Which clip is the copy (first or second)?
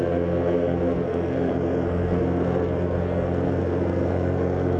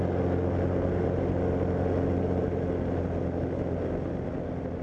first